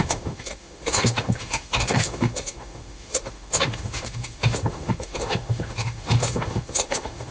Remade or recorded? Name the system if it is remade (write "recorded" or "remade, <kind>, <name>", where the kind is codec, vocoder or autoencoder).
remade, autoencoder, DAC-VAE